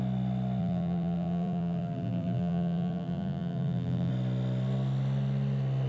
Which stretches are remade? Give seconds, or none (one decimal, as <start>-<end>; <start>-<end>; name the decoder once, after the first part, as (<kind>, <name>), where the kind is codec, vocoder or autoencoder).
0.6-4.1 (vocoder, BigVGAN v2)